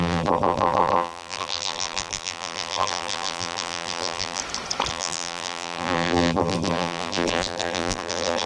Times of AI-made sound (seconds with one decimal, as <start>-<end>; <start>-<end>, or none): 0.0-4.4; 4.9-8.5